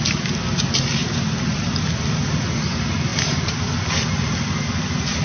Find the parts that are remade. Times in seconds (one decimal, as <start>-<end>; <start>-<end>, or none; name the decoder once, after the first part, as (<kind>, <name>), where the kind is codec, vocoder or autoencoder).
1.0-2.0 (vocoder, BigVGAN v2); 3.1-5.2